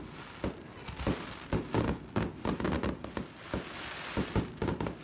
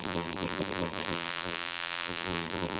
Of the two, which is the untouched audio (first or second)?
first